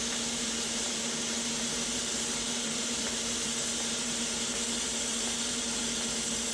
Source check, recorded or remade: remade